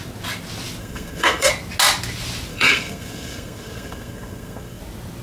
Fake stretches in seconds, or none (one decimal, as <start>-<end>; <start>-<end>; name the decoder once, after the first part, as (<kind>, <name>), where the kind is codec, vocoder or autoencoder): 0.8-1.5 (codec, SNAC); 2.5-4.8